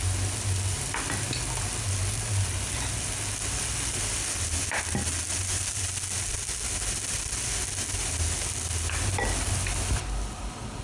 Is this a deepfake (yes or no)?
no